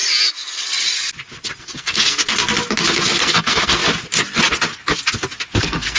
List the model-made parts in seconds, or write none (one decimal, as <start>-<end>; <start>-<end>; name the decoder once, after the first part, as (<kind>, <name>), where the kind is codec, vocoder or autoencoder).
1.6-2.2 (codec, SNAC); 3.2-3.8; 5.6-6.0